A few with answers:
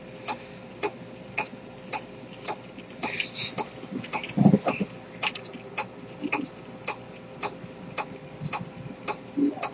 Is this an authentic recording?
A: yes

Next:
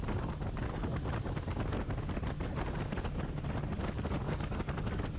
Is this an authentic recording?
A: yes